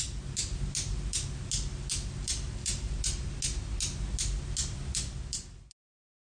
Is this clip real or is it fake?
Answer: real